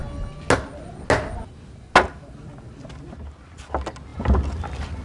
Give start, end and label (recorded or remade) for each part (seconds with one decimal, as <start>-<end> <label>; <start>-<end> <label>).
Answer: 0.0-5.0 recorded